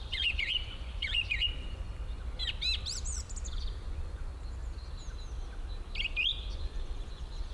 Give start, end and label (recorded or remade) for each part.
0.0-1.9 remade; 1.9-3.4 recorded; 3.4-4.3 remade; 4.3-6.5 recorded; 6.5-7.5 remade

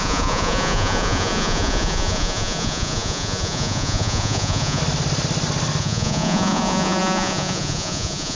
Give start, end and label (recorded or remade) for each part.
0.0-4.8 remade; 4.8-5.8 recorded; 5.8-8.3 remade

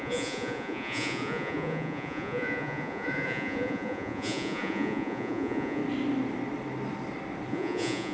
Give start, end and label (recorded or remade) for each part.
0.0-5.8 remade; 5.8-7.5 recorded; 7.5-8.1 remade